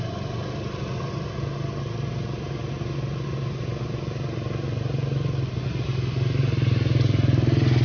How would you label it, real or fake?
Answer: real